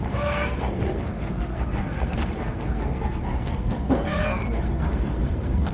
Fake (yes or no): yes